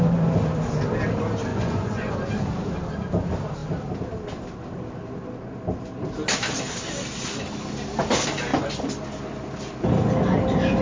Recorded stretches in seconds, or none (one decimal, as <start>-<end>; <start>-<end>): 0.0-1.5; 2.1-10.8